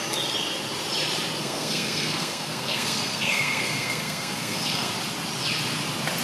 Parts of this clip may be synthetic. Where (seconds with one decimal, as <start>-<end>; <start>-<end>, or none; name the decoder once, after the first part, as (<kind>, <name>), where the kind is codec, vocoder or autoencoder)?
1.4-4.9 (codec, SNAC)